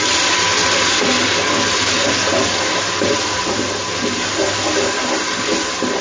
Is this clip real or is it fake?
real